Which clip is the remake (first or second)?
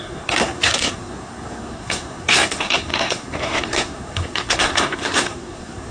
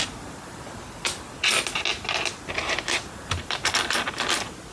first